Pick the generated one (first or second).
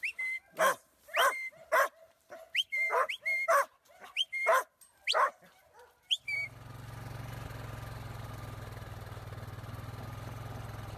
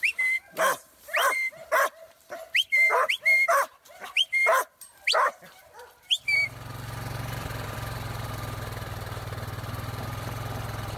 second